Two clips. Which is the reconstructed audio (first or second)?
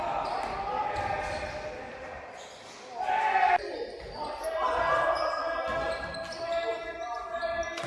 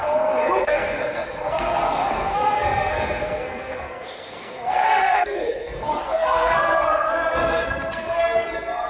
second